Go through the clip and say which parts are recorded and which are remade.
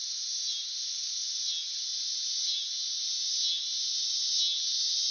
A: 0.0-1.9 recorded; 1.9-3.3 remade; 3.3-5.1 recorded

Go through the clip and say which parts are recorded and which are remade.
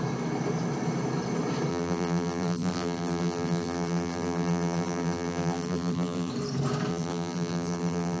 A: 0.0-1.7 recorded; 1.7-6.3 remade; 6.3-6.9 recorded; 6.9-8.2 remade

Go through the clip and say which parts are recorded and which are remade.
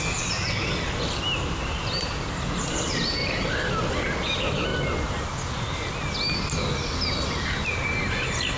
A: 0.0-3.2 recorded; 3.2-3.7 remade; 3.7-4.7 recorded; 4.7-5.9 remade; 5.9-8.6 recorded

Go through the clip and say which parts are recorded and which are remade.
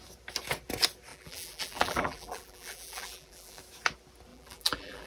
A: 0.0-1.1 recorded; 1.1-3.6 remade; 3.6-4.3 recorded; 4.3-5.1 remade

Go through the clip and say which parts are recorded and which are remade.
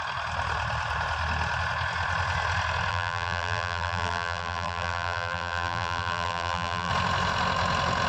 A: 0.0-2.9 recorded; 2.9-6.9 remade; 6.9-8.1 recorded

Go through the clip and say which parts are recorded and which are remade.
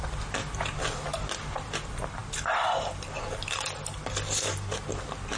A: 0.0-5.4 recorded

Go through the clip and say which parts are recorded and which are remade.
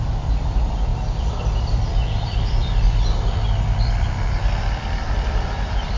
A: 0.0-0.9 remade; 0.9-1.4 recorded; 1.4-6.0 remade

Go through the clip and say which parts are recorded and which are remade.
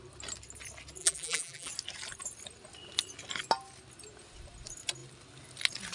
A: 0.0-1.0 recorded; 1.0-1.7 remade; 1.7-5.9 recorded